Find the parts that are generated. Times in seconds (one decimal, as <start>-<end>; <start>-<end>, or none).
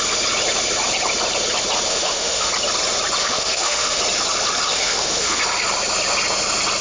1.9-2.5; 3.2-4.0; 4.7-5.4